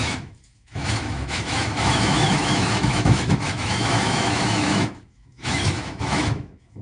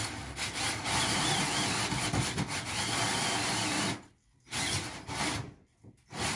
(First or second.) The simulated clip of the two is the first